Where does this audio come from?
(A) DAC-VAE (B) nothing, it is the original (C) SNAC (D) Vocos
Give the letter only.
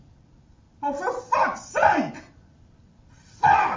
B